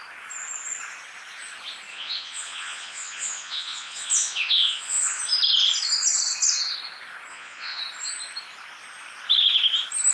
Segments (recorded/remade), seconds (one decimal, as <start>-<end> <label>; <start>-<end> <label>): 0.0-1.9 recorded; 1.9-5.2 remade; 5.2-7.3 recorded; 7.3-7.8 remade; 7.8-10.1 recorded

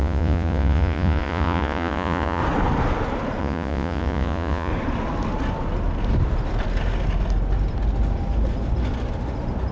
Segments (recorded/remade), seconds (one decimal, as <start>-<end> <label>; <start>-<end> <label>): 0.0-2.4 remade; 2.4-3.4 recorded; 3.4-4.7 remade; 4.7-9.7 recorded

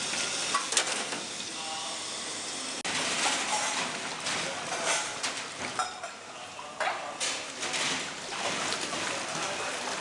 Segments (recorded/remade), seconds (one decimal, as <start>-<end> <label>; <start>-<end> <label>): 0.0-0.6 recorded; 0.6-1.5 remade; 1.5-10.0 recorded

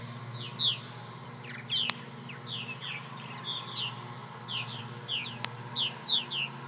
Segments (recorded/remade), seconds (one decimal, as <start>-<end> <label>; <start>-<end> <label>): 0.0-6.7 recorded